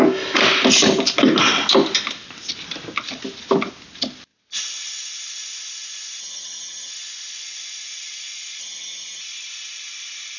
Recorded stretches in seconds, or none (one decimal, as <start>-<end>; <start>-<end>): 0.0-6.2; 6.9-8.6; 9.2-10.4